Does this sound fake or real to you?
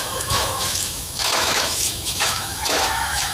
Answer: fake